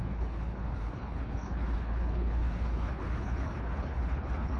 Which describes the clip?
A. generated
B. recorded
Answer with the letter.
A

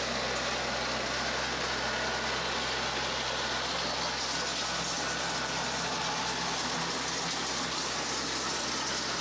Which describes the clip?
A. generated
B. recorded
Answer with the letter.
B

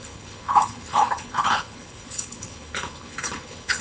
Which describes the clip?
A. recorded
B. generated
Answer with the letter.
B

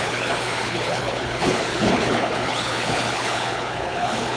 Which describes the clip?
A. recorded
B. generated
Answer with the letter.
B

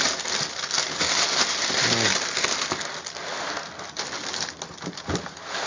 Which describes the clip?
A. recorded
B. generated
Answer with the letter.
A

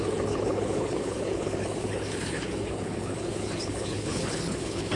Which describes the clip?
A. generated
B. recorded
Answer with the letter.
A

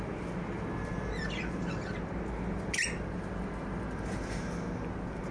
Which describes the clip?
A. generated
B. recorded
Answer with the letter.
B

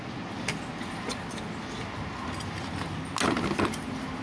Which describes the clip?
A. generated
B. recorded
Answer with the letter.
B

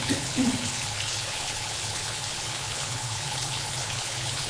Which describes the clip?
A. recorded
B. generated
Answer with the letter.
B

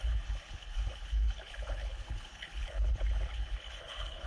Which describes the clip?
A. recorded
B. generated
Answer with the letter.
B